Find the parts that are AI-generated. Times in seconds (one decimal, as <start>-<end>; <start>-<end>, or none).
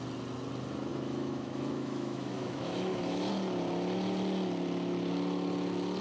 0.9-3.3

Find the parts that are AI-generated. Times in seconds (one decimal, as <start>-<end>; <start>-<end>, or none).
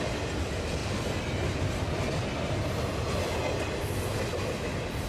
none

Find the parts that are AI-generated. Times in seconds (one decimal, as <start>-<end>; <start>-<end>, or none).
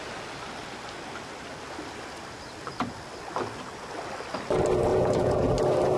4.9-5.5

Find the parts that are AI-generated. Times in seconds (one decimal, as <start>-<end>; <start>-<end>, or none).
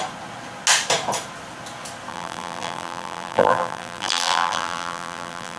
2.1-5.6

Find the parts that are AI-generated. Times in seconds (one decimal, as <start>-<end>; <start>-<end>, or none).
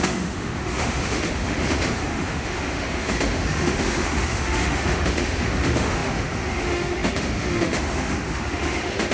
0.0-9.1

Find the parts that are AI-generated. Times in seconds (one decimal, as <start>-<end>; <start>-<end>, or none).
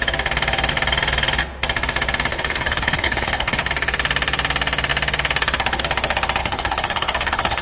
2.3-3.7; 6.4-7.6